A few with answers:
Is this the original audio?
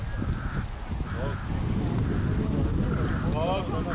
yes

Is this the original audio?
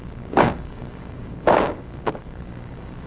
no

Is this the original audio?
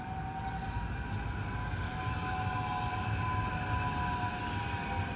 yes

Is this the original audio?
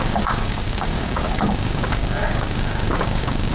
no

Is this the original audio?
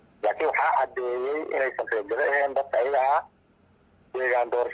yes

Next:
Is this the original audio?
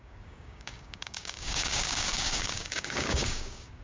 no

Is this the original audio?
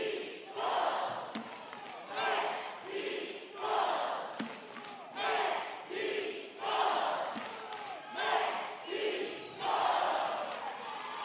yes